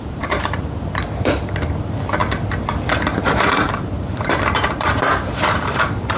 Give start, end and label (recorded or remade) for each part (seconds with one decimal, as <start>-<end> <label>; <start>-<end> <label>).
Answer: 0.0-2.2 remade; 2.2-3.4 recorded; 3.4-6.2 remade